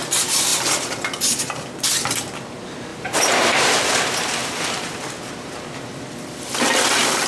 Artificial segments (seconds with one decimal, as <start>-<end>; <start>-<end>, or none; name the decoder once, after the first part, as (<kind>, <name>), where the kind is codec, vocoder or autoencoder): 2.9-3.8 (vocoder, BigVGAN v2); 4.4-7.3